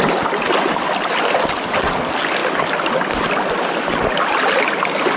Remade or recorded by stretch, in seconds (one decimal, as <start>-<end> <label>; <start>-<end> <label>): 0.0-5.2 recorded